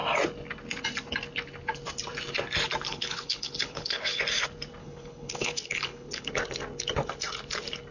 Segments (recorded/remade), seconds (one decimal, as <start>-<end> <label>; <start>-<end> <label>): 0.0-2.9 recorded; 2.9-4.2 remade; 4.2-4.8 recorded; 4.8-6.3 remade; 6.3-7.9 recorded